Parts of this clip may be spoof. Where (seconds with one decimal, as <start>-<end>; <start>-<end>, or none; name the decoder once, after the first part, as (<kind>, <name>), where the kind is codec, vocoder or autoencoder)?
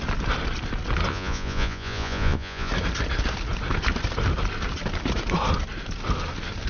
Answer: 1.1-2.7 (vocoder, Vocos)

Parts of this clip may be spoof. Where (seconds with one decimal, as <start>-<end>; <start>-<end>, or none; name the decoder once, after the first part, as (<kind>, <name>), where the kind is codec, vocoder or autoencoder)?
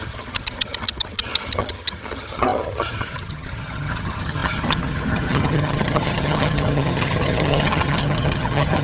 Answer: 0.0-8.8 (vocoder, HiFi-GAN)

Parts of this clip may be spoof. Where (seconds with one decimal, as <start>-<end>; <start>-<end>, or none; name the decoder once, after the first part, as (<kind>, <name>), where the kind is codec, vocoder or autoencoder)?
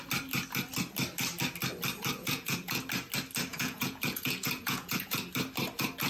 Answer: 2.2-2.8 (vocoder, Vocos); 3.5-5.2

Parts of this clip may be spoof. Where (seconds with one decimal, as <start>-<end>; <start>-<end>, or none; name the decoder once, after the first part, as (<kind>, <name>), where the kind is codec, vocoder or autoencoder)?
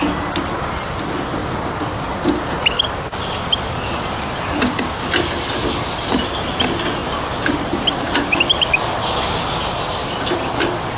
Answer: none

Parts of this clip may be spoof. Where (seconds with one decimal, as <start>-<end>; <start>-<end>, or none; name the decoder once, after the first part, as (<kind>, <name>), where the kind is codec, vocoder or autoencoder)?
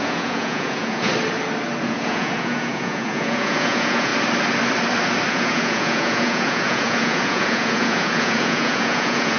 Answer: 0.0-1.1 (vocoder, Vocos); 1.8-4.1; 5.3-9.4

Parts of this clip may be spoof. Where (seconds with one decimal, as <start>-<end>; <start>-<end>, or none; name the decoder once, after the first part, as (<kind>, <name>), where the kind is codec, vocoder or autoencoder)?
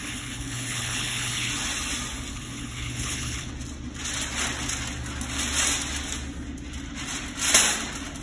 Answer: 0.0-1.5 (codec, HILCodec); 2.3-3.5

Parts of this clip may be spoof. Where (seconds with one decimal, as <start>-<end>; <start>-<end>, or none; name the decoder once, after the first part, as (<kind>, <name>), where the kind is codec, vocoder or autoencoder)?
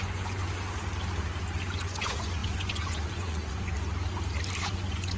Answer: 0.0-0.4 (vocoder, Vocos); 1.8-3.7; 4.6-5.2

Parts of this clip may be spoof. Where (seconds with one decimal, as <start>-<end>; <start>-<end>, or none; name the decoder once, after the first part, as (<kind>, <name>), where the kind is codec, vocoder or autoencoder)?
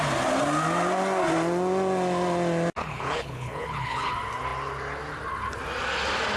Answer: 2.8-4.1 (codec, HILCodec)